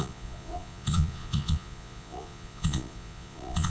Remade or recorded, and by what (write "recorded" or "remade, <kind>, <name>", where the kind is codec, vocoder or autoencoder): remade, vocoder, Vocos